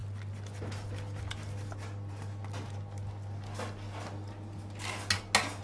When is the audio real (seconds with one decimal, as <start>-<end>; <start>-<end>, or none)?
0.0-5.6